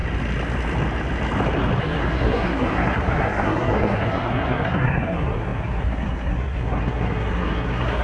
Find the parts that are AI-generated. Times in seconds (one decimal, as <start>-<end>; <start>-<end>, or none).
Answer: 1.8-8.0